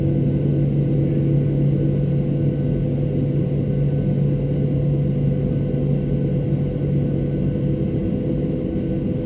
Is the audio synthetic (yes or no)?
no